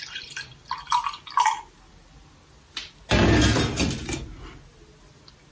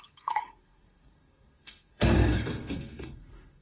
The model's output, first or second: second